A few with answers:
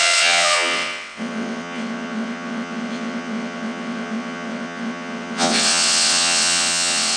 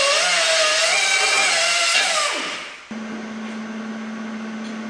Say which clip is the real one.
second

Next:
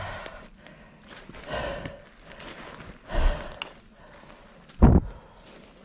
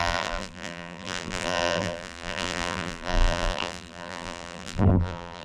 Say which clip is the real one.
first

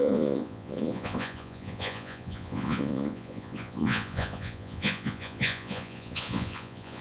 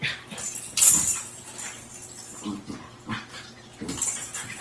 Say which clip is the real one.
second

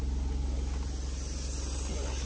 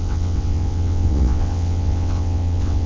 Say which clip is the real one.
first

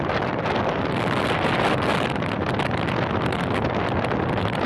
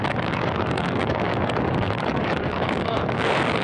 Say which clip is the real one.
first